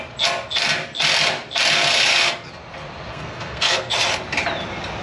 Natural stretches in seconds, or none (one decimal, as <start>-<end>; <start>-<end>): 0.0-3.1; 3.9-5.0